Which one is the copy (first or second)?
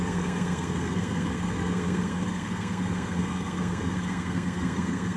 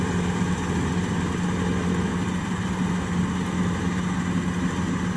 first